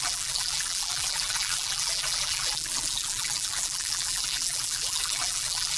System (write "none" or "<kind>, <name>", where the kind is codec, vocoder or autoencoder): vocoder, BigVGAN v2